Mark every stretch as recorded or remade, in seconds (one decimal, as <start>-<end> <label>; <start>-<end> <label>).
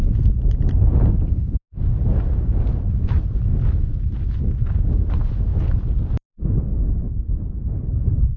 0.0-3.5 remade; 3.5-5.0 recorded; 5.0-5.5 remade; 5.5-6.3 recorded; 6.3-6.7 remade; 6.7-7.5 recorded; 7.5-8.4 remade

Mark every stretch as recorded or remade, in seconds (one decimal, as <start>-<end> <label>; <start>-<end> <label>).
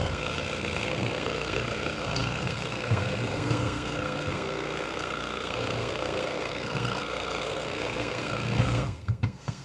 0.0-9.6 remade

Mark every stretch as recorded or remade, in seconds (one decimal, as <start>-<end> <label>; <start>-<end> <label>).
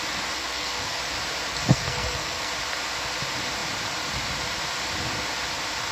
0.0-0.4 recorded; 0.4-1.0 remade; 1.0-1.5 recorded; 1.5-2.5 remade; 2.5-5.9 recorded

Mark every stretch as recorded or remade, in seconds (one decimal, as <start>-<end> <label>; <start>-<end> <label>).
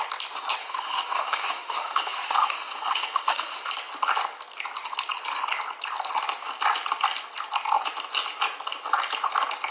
0.0-0.6 recorded; 0.6-3.7 remade; 3.7-9.7 recorded